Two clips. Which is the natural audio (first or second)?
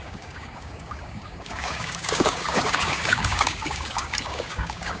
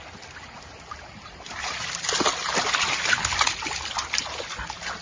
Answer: second